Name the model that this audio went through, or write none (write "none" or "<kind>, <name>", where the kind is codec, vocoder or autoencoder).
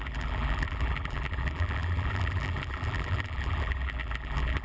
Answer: vocoder, BigVGAN v2